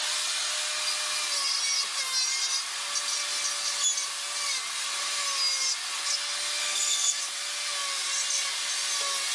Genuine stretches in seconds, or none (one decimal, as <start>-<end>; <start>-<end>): 0.0-6.6; 7.2-9.3